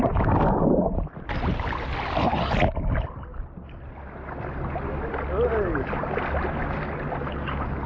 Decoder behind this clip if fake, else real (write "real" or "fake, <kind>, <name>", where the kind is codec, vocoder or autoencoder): real